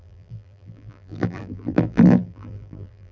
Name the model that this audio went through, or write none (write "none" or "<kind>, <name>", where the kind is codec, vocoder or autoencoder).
vocoder, BigVGAN v2